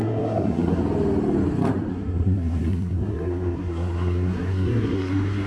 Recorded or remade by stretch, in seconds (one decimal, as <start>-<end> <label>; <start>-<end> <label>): 0.0-0.8 remade; 0.8-1.9 recorded; 1.9-5.5 remade